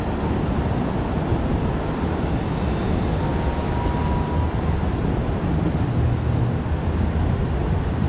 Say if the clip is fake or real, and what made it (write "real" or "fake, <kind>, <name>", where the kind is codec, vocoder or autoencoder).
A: real